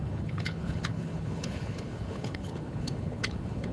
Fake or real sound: fake